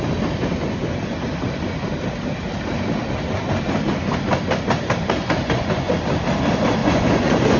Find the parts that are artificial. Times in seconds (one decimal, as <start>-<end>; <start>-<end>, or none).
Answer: 5.2-5.9; 6.8-7.6